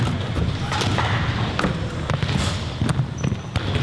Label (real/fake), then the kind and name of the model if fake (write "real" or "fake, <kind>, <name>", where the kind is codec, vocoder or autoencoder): real